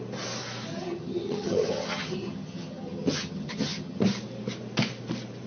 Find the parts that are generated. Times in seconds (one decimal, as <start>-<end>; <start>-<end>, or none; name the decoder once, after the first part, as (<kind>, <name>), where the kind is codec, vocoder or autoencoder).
0.7-4.0 (vocoder, HiFi-GAN)